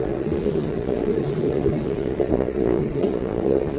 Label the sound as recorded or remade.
remade